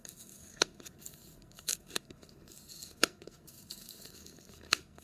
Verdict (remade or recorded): remade